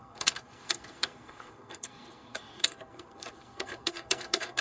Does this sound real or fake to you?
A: fake